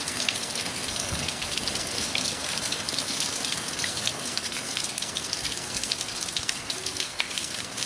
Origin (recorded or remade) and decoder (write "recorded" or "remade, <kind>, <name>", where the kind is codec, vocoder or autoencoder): remade, codec, SNAC